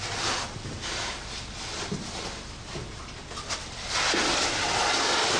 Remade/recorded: recorded